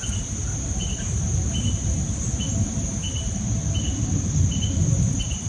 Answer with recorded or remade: recorded